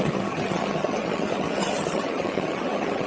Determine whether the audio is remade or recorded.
remade